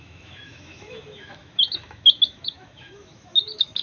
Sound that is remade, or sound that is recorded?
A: remade